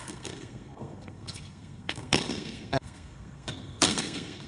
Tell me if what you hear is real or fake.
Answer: fake